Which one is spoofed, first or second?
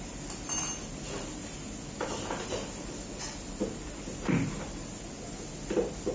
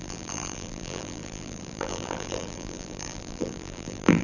second